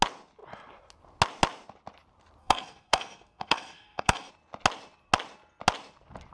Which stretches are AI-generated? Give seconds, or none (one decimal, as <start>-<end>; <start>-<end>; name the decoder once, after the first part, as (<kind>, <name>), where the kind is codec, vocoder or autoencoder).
2.4-4.3 (codec, SNAC)